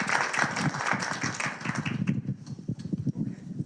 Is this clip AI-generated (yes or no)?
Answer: no